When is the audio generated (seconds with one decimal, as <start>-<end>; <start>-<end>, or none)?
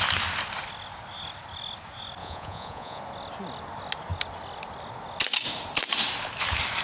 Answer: 2.2-3.0